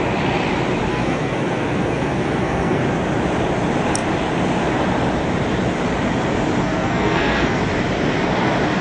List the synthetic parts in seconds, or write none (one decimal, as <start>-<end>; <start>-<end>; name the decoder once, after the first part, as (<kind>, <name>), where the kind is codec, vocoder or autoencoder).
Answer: 0.9-2.8 (codec, SNAC); 6.6-7.6